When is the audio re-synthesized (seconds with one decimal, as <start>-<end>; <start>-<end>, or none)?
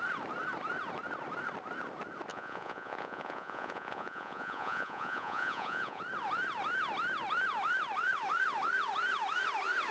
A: 2.3-6.0